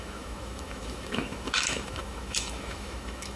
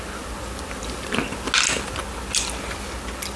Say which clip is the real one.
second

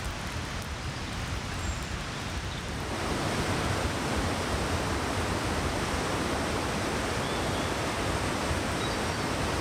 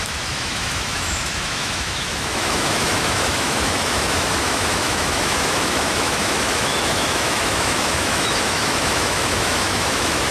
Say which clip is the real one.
first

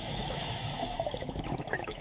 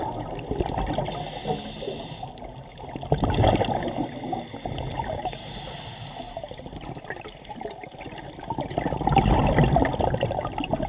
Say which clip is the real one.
second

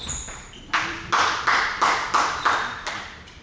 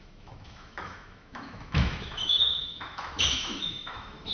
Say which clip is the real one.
first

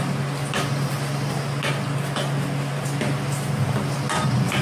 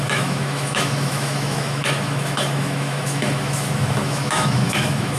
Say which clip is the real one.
first